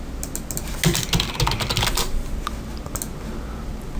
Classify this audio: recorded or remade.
recorded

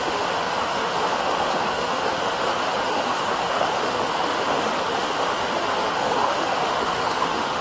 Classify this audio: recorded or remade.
remade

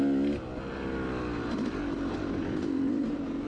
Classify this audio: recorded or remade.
recorded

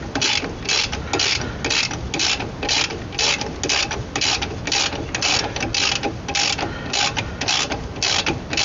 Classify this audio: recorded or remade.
recorded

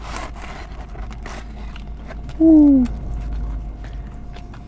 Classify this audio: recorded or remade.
recorded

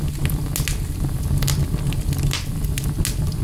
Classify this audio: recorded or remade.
recorded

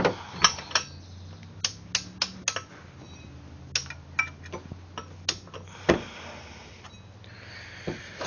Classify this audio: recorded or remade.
recorded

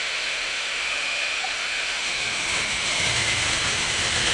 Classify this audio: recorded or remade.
remade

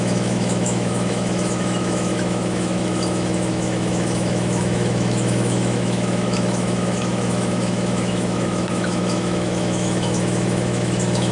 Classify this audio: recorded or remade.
remade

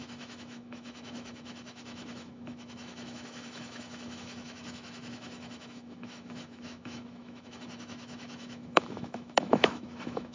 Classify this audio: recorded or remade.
remade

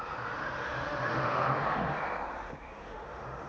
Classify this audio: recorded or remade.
remade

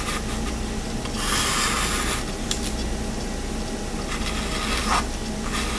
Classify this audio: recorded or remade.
recorded